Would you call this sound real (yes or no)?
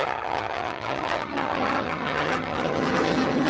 no